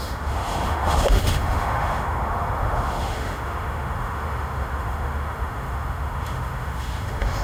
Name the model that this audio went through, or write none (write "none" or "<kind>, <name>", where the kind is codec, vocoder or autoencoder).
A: autoencoder, DAC-VAE